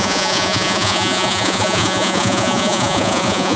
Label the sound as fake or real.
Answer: fake